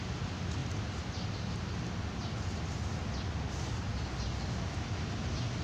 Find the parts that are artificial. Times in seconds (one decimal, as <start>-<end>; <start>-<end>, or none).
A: none